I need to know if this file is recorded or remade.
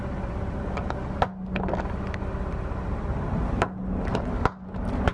recorded